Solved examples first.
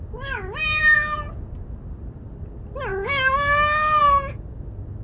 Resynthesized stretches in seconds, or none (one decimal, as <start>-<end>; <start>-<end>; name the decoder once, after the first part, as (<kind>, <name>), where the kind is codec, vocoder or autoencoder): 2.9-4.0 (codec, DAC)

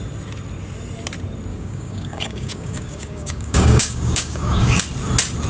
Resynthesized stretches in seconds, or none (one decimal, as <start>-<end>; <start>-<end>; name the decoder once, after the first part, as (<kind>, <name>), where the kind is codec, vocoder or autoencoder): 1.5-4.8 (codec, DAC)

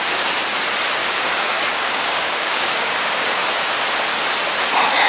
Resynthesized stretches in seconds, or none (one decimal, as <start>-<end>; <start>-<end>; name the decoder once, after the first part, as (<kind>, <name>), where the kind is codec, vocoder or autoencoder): 1.0-3.4 (codec, DAC)

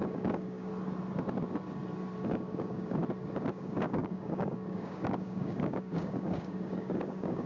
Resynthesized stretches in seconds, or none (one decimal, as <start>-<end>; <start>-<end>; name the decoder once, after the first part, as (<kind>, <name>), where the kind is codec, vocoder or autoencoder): 0.0-0.7 (codec, DAC); 2.3-3.0; 3.5-7.5